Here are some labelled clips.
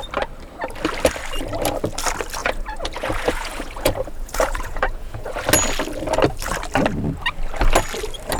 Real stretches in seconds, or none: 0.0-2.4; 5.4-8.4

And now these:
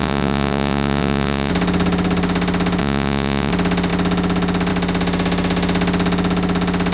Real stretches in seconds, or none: 1.5-2.8; 3.5-6.9

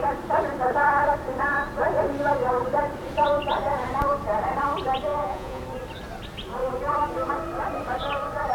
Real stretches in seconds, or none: 0.0-5.1; 5.6-8.5

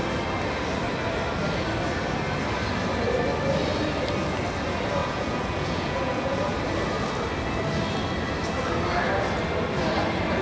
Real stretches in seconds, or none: 0.0-5.0; 6.6-10.4

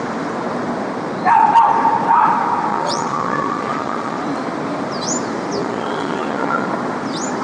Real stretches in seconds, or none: 0.0-2.7; 4.2-5.6; 6.7-7.4

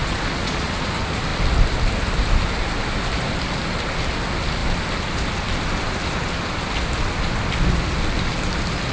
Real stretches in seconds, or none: 0.9-8.9